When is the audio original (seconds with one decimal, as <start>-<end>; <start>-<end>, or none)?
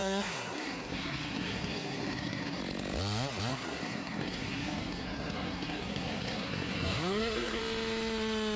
2.6-3.5; 7.6-8.6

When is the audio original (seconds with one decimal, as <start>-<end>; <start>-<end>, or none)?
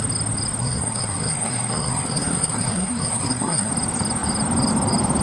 0.0-0.6; 3.7-5.2